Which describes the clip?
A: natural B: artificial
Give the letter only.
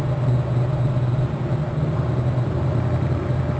A